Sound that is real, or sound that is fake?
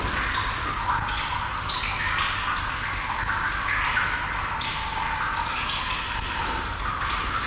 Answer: real